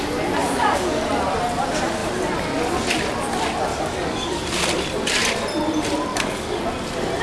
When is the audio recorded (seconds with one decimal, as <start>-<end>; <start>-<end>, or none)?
0.0-0.4; 1.0-3.7; 4.4-6.1; 6.6-7.2